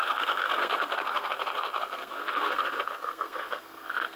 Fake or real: fake